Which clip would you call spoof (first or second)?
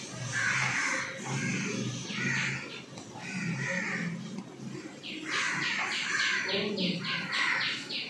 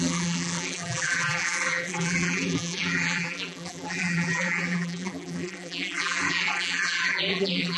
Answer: second